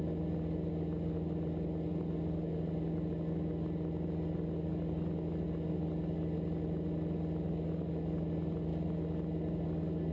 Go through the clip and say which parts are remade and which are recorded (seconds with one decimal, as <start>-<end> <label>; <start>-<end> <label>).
0.0-10.1 recorded